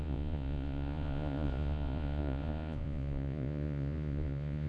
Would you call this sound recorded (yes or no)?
no